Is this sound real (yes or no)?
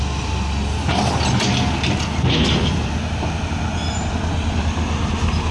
yes